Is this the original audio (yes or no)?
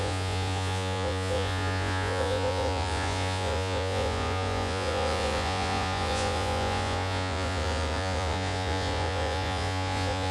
no